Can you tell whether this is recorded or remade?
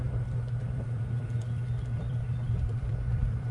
remade